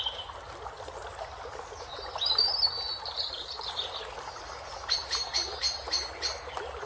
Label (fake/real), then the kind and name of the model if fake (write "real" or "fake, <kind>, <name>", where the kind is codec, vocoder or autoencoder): real